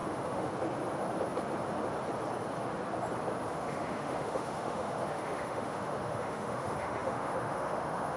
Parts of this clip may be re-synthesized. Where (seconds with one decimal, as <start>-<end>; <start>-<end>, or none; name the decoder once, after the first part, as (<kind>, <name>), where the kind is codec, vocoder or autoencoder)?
0.0-0.5 (autoencoder, DAC-VAE); 3.5-8.2